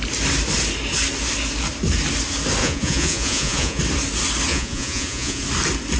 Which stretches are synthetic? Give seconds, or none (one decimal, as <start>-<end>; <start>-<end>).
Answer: 2.6-3.8; 4.5-5.4